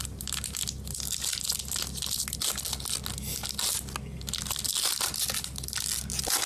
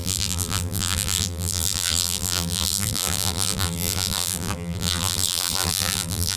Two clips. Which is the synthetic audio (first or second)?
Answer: second